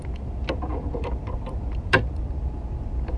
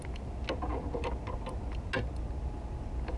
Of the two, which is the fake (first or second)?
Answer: first